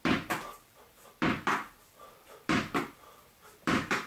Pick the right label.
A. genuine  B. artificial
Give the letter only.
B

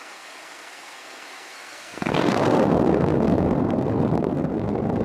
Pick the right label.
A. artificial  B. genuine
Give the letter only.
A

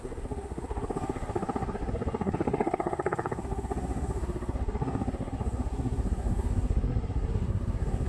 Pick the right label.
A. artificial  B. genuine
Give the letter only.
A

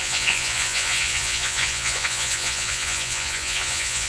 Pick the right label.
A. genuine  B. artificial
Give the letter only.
B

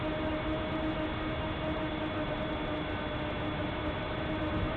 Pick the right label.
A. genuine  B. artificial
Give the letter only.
A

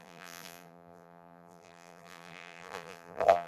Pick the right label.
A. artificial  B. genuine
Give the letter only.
A